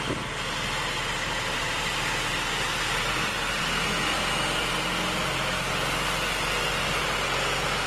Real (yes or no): yes